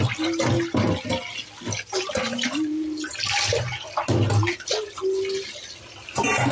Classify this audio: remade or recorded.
recorded